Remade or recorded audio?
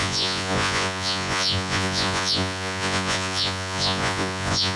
remade